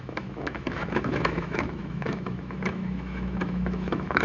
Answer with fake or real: fake